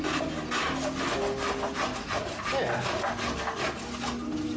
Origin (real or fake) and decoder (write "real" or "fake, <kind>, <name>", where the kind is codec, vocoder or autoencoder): real